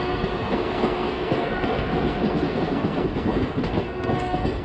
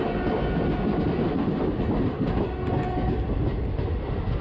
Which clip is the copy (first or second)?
first